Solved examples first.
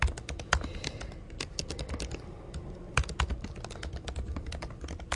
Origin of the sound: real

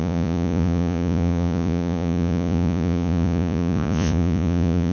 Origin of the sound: fake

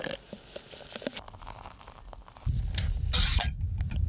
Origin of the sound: real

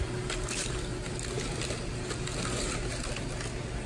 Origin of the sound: real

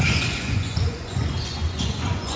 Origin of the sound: fake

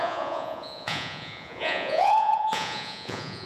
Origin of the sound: fake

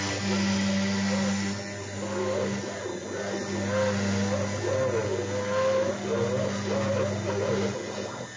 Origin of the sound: real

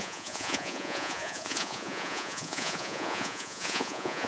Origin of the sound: fake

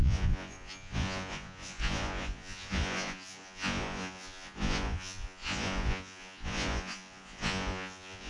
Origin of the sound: fake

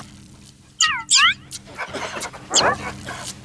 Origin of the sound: real